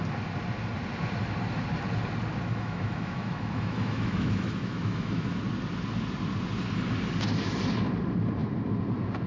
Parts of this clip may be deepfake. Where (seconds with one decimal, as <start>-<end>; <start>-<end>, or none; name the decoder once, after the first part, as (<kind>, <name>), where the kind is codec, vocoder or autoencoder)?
2.5-5.4 (autoencoder, DAC-VAE)